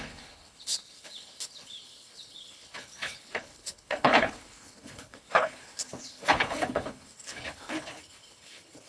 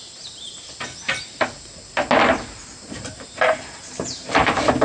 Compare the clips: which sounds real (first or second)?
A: second